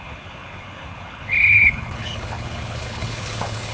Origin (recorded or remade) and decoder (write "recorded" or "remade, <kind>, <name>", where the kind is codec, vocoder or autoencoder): remade, codec, HILCodec